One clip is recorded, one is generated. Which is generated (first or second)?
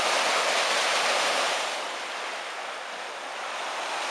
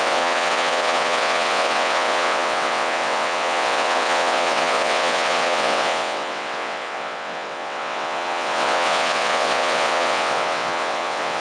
second